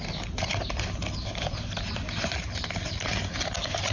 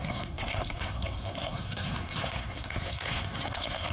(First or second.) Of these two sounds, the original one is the first